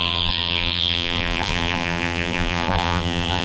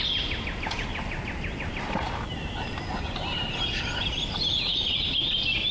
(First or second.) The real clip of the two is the second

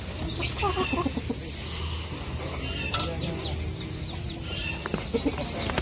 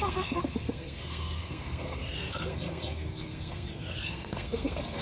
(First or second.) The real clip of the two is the first